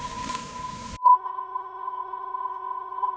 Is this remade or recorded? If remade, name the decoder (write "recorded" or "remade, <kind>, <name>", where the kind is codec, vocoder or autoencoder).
remade, codec, SNAC